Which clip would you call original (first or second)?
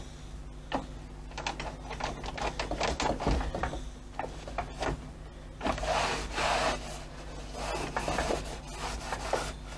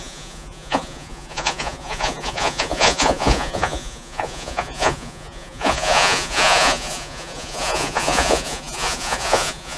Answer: first